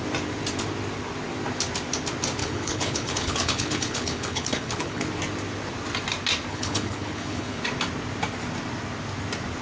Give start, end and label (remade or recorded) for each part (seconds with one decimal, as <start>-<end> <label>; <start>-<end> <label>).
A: 0.0-2.4 recorded; 2.4-5.1 remade; 5.1-6.5 recorded; 6.5-7.6 remade; 7.6-9.6 recorded